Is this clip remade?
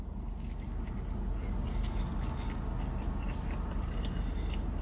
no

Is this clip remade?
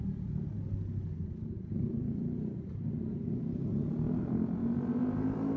no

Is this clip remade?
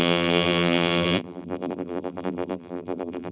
yes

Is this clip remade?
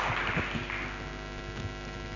no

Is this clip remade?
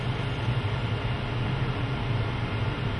no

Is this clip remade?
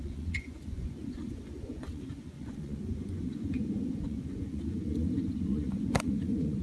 yes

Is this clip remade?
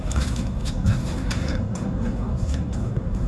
yes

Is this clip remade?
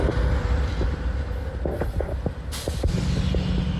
no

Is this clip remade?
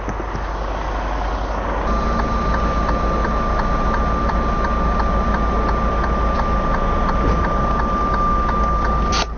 no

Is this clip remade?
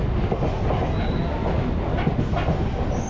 no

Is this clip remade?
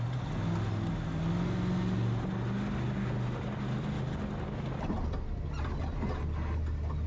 no